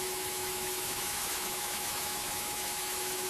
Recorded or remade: remade